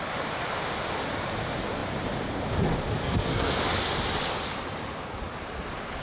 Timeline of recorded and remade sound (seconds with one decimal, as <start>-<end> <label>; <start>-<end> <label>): 0.0-3.0 recorded; 3.0-3.6 remade; 3.6-6.0 recorded